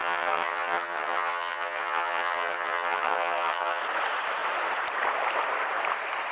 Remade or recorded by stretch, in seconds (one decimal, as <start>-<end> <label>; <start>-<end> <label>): 0.0-3.8 remade; 3.8-6.3 recorded

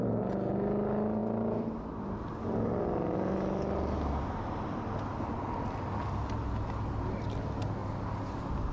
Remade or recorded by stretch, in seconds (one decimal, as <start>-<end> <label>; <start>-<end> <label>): 0.0-8.7 recorded

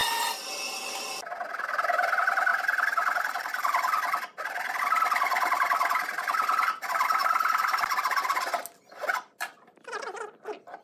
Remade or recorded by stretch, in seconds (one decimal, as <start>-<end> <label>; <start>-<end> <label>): 0.0-1.4 recorded; 1.4-7.2 remade; 7.2-10.8 recorded

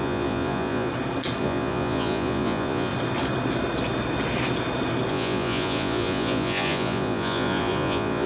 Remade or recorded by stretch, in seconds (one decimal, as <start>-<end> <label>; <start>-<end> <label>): 0.0-0.9 remade; 0.9-1.4 recorded; 1.4-2.9 remade; 2.9-5.1 recorded; 5.1-8.3 remade